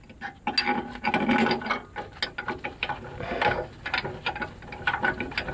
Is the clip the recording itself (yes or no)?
yes